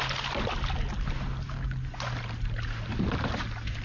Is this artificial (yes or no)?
no